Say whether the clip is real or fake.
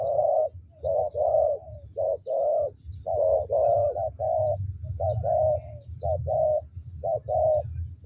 real